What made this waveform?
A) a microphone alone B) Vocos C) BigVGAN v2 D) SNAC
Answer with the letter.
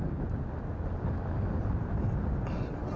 A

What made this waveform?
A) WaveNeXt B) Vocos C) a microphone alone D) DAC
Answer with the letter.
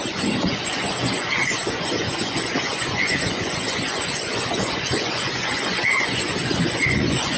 B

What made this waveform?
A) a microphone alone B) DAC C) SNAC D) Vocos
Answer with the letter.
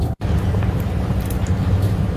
A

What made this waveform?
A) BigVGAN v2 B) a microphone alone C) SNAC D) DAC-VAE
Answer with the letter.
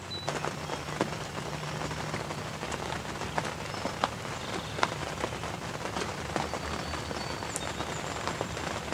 B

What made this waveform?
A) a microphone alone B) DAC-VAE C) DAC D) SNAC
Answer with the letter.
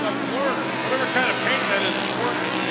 A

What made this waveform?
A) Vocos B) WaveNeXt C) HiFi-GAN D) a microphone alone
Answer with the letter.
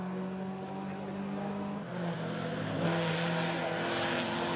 D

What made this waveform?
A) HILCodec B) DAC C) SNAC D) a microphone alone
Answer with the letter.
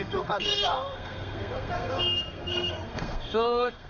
C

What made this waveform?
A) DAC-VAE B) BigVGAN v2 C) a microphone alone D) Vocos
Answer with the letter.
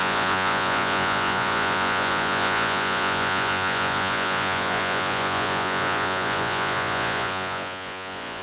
D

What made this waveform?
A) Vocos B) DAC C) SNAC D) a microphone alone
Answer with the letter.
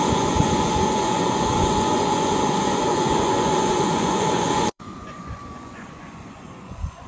A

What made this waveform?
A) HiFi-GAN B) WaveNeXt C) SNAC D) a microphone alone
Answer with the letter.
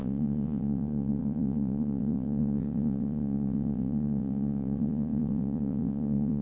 B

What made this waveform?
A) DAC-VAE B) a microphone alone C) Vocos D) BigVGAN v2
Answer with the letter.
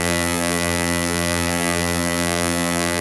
D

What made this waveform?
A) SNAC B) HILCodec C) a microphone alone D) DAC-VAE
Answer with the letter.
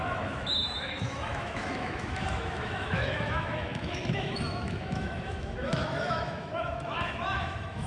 D